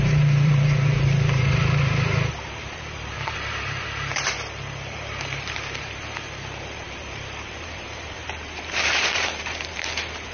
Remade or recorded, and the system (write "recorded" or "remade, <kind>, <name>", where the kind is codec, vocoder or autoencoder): remade, vocoder, BigVGAN v2